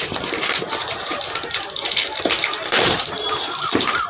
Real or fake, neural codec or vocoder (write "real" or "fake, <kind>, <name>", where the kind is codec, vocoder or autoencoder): fake, vocoder, BigVGAN v2